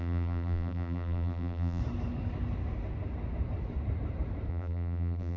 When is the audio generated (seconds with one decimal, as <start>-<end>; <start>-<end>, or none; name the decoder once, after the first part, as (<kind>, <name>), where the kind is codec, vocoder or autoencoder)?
0.0-1.8 (vocoder, BigVGAN v2); 4.5-5.4